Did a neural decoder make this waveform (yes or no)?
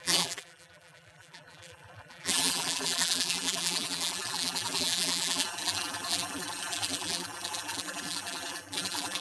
yes